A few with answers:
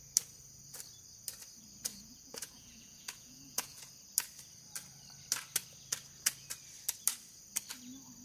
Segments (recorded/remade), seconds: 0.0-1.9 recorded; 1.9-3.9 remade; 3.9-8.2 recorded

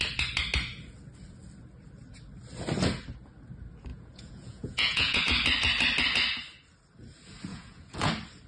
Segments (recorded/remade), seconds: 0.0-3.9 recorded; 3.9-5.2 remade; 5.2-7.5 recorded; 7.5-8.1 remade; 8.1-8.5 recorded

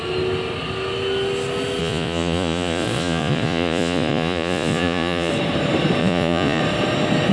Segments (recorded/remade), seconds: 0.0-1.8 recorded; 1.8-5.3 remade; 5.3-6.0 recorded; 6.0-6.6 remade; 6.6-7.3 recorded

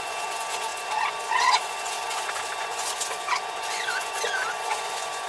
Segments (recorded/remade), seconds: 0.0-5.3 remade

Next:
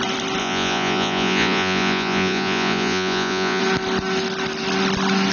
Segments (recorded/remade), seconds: 0.0-0.4 recorded; 0.4-3.6 remade; 3.6-5.3 recorded

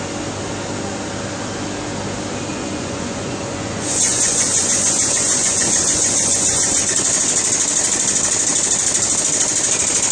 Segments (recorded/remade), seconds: 0.0-2.5 recorded; 2.5-7.2 remade; 7.2-10.1 recorded

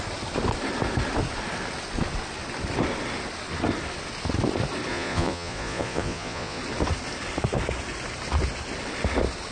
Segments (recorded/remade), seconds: 0.0-4.9 recorded; 4.9-6.6 remade; 6.6-9.5 recorded

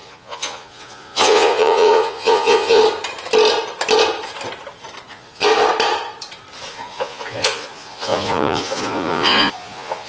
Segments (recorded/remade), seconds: 0.0-2.8 remade; 2.8-5.1 recorded; 5.1-5.5 remade; 5.5-6.7 recorded; 6.7-10.1 remade